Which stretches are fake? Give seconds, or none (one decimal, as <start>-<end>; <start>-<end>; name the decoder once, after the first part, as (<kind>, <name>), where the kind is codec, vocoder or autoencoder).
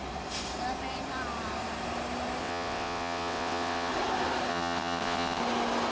2.4-3.9 (vocoder, WaveNeXt); 4.5-5.4